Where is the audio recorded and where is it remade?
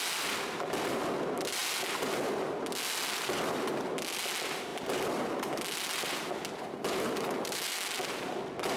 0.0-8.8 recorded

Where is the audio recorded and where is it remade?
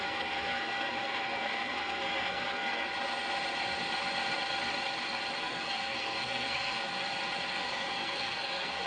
0.0-2.9 remade; 2.9-5.4 recorded; 5.4-6.9 remade; 6.9-7.5 recorded; 7.5-8.9 remade